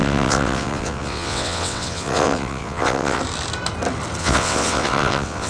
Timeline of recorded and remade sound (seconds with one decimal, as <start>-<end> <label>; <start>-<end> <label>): 0.0-3.2 remade; 3.2-4.2 recorded; 4.2-5.5 remade